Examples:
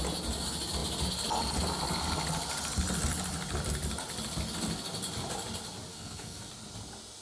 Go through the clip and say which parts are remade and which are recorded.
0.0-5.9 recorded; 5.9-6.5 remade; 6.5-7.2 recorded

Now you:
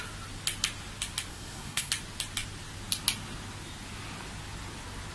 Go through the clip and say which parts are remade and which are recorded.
0.0-1.3 recorded; 1.3-1.9 remade; 1.9-5.1 recorded

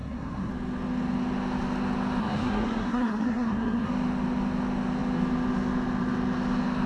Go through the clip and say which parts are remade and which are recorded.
0.0-0.5 remade; 0.5-2.2 recorded; 2.2-3.9 remade; 3.9-6.9 recorded

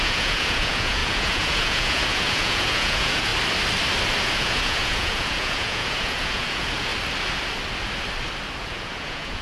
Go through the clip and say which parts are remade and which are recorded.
0.0-3.3 remade; 3.3-4.2 recorded; 4.2-6.9 remade; 6.9-8.6 recorded; 8.6-9.4 remade

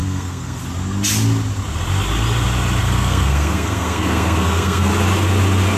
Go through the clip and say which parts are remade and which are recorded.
0.0-0.6 remade; 0.6-2.8 recorded; 2.8-4.9 remade; 4.9-5.8 recorded

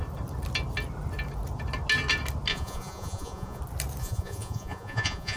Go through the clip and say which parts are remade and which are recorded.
0.0-2.5 recorded; 2.5-3.6 remade; 3.6-4.0 recorded; 4.0-5.4 remade